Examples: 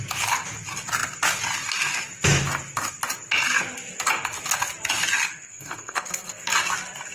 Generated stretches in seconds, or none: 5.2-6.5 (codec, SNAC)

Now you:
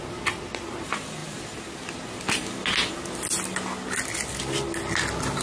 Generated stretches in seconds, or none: none

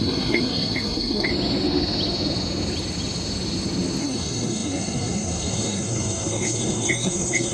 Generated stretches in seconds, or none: 0.0-1.3 (codec, SNAC); 4.0-7.5

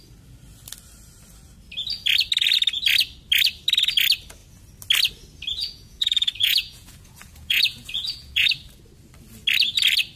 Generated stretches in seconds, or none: 5.6-8.5 (vocoder, Vocos)

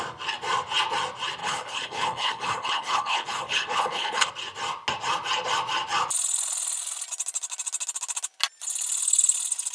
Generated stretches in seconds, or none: 1.4-4.3 (codec, HILCodec)

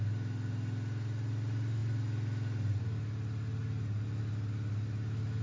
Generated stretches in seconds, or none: none

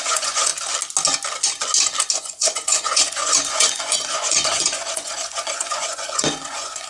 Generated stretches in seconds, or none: 0.0-0.5 (vocoder, Vocos); 2.2-6.9